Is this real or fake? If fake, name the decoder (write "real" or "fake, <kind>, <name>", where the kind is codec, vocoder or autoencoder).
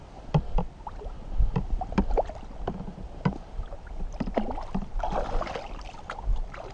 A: real